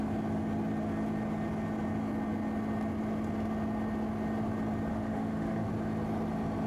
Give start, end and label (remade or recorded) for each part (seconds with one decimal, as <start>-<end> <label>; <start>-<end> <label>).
0.0-4.9 recorded; 4.9-5.7 remade; 5.7-6.7 recorded